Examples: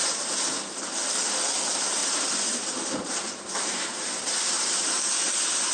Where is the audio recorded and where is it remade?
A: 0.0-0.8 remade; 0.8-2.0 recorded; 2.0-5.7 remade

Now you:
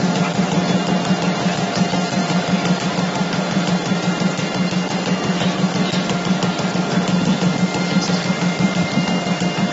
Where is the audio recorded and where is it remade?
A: 0.0-9.7 recorded

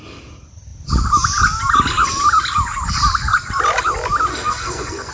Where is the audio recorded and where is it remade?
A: 0.0-4.3 recorded; 4.3-5.1 remade

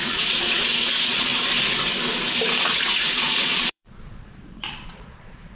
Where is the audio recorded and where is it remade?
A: 0.0-1.3 remade; 1.3-2.6 recorded; 2.6-5.5 remade

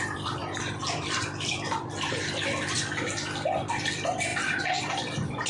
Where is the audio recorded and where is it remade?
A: 0.0-5.5 remade